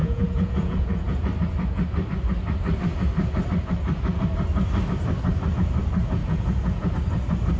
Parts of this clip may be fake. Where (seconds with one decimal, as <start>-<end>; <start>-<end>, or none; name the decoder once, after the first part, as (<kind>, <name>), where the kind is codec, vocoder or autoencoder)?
0.0-1.2 (vocoder, Vocos); 6.2-6.9